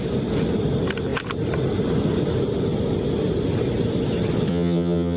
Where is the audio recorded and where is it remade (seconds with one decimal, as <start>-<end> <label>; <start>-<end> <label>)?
0.0-4.5 recorded; 4.5-5.2 remade